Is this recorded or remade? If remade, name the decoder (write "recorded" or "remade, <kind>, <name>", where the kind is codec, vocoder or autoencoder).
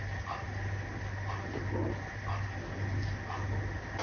recorded